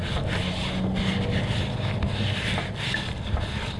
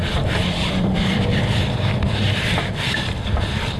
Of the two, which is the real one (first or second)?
first